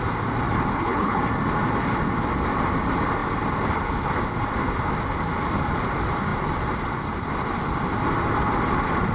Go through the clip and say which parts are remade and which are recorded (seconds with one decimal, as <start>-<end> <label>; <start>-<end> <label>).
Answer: 0.0-0.7 recorded; 0.7-1.2 remade; 1.2-9.1 recorded